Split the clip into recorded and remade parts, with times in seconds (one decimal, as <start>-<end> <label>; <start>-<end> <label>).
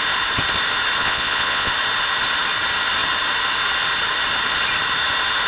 0.0-1.0 recorded; 1.0-1.7 remade; 1.7-5.5 recorded